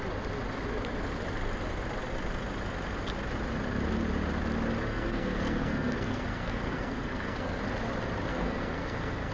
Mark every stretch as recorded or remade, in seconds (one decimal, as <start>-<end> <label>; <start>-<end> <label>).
0.0-4.9 recorded; 4.9-7.6 remade; 7.6-8.3 recorded; 8.3-9.3 remade